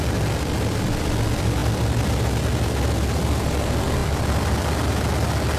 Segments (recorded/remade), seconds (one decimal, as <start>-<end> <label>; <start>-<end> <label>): 0.0-5.6 recorded